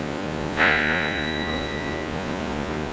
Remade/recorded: remade